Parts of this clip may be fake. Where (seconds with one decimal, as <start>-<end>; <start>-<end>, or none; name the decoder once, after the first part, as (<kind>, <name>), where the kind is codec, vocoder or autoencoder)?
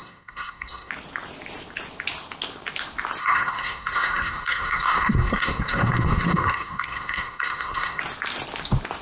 0.0-0.9 (codec, SNAC); 3.2-8.0